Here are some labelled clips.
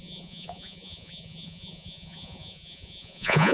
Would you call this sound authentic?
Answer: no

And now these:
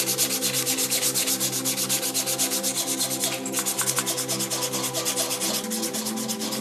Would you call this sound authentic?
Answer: yes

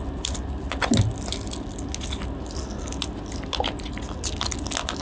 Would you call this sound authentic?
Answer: yes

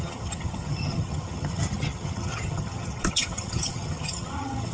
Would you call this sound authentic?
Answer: no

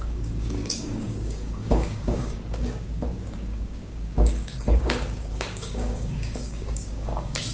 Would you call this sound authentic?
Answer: no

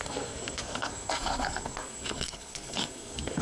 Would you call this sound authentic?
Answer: no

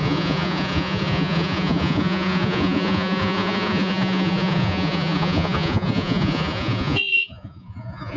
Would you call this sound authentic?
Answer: no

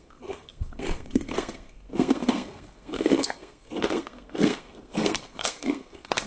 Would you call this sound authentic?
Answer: no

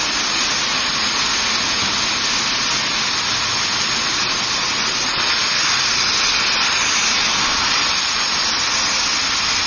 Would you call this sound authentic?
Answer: yes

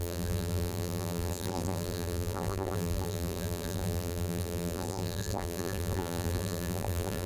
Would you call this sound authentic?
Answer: no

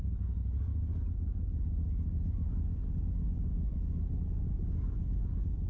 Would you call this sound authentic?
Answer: yes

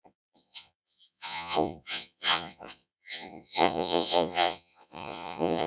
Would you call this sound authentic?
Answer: no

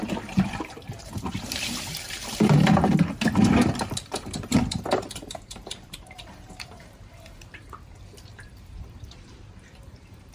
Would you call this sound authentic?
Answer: no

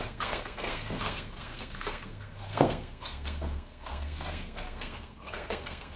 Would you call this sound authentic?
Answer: no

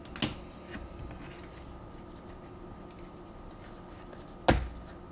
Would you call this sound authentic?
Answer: yes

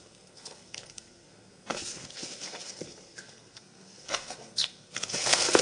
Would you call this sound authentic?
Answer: no